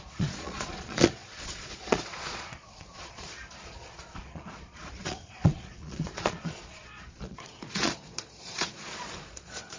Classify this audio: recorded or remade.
remade